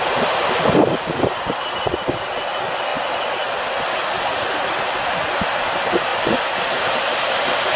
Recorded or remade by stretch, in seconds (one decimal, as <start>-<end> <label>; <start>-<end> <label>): 0.0-7.8 recorded